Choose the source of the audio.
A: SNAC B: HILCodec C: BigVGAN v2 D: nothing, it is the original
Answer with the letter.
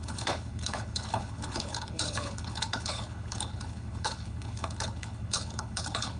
B